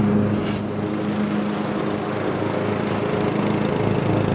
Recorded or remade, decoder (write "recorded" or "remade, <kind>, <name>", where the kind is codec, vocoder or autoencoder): recorded